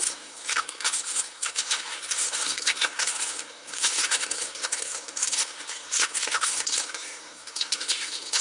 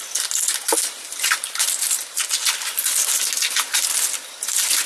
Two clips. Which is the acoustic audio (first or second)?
second